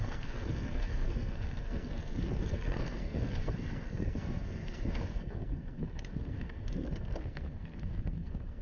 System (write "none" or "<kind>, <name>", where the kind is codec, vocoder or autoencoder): codec, SNAC